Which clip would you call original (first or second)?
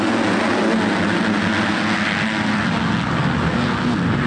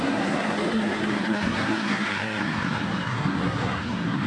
first